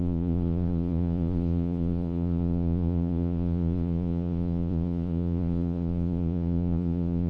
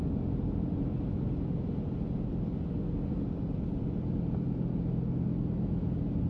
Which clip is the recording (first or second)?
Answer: second